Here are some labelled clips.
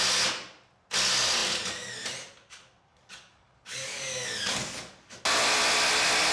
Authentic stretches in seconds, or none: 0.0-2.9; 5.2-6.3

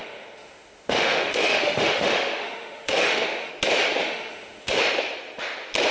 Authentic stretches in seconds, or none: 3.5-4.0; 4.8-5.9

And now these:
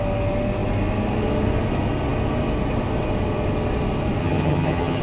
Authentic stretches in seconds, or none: 0.0-4.2